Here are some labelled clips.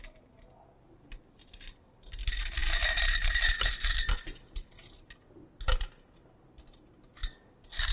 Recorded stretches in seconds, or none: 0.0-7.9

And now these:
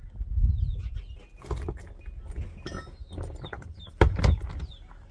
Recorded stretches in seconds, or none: 0.0-5.1

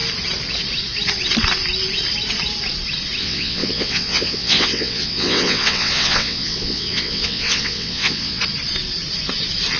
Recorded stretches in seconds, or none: 0.0-3.2; 8.4-9.8

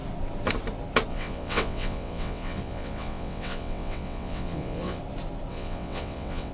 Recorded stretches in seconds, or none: 0.0-1.1; 5.0-5.5